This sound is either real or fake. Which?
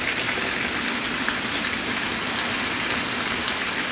real